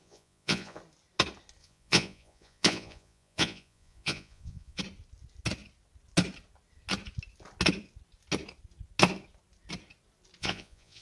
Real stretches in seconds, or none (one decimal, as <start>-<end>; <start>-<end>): 0.8-1.6; 4.8-10.4